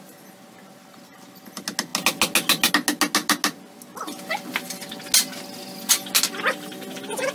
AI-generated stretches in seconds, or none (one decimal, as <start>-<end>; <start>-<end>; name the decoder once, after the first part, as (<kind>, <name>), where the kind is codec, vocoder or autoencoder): none